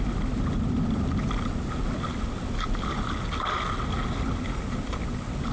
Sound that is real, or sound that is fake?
real